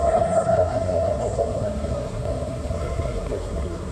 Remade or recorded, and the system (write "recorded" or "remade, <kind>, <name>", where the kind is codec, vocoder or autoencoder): remade, codec, SNAC